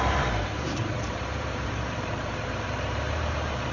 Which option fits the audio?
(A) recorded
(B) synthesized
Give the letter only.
B